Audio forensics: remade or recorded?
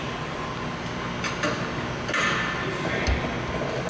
recorded